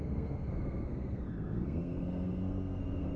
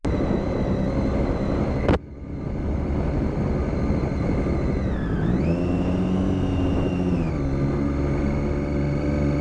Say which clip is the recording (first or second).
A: second